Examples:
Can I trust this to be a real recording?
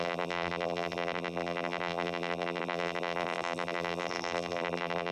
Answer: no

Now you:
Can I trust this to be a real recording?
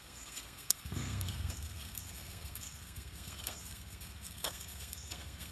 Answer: no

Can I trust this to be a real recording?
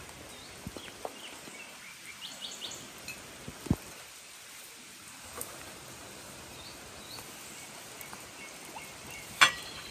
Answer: yes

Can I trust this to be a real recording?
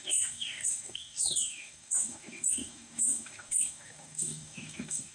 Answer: no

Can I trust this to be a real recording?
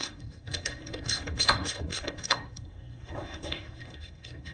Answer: no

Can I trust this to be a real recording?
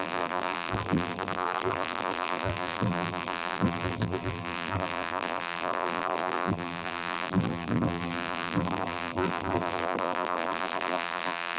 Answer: no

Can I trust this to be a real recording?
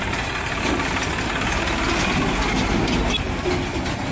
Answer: yes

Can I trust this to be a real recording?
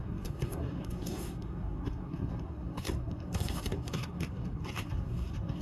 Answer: no